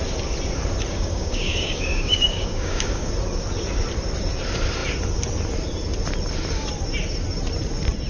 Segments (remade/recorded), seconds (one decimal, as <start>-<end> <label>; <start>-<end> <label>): 0.0-0.9 recorded; 0.9-3.1 remade; 3.1-8.1 recorded